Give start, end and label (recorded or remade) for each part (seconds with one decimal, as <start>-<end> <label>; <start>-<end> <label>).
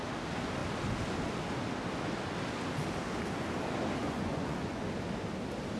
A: 0.0-4.0 recorded; 4.0-4.8 remade; 4.8-5.8 recorded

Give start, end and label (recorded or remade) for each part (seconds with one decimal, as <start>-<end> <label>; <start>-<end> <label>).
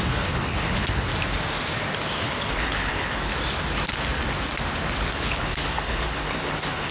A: 0.0-1.1 remade; 1.1-2.2 recorded; 2.2-3.3 remade; 3.3-5.1 recorded; 5.1-6.9 remade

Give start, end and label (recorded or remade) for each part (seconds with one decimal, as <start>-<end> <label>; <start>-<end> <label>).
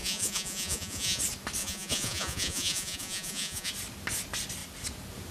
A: 0.0-1.2 remade; 1.2-1.6 recorded; 1.6-3.7 remade; 3.7-5.3 recorded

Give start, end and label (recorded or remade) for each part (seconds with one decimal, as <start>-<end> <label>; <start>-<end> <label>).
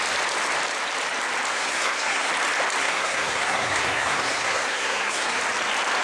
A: 0.0-1.5 recorded; 1.5-2.3 remade; 2.3-2.8 recorded; 2.8-5.4 remade; 5.4-6.0 recorded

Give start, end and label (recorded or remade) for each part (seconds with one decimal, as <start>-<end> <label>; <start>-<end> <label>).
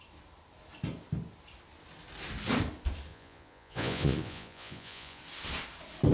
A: 0.0-3.1 recorded; 3.1-5.2 remade; 5.2-6.1 recorded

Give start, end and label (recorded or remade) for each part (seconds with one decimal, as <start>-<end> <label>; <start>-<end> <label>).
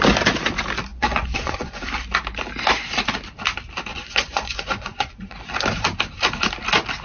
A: 0.0-0.9 recorded; 0.9-1.8 remade; 1.8-3.9 recorded; 3.9-5.4 remade; 5.4-7.0 recorded